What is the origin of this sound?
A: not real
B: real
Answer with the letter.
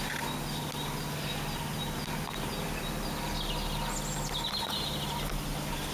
B